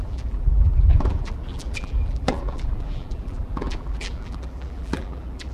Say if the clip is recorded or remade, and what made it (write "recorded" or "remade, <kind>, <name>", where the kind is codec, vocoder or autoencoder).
remade, vocoder, BigVGAN v2